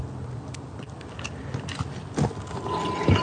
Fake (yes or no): no